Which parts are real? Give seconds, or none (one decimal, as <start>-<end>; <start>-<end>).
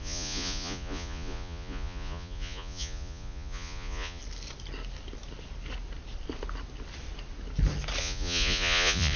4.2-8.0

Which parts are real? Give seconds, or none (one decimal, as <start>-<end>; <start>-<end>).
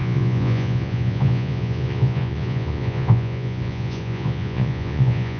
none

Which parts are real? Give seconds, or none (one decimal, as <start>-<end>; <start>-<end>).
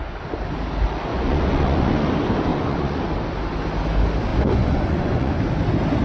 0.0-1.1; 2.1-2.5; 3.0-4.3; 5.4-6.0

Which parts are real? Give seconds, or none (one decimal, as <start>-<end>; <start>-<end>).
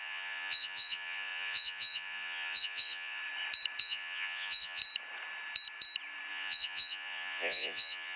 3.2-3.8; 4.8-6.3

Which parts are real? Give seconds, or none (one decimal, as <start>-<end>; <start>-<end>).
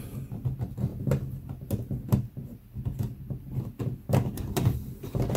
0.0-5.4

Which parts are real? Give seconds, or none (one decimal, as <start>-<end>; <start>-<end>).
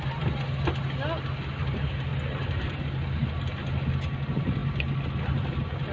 0.0-5.9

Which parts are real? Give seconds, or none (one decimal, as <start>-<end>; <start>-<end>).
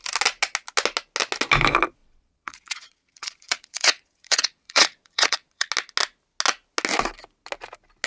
0.0-2.0; 5.7-8.1